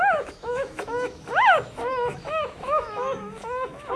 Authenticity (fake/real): fake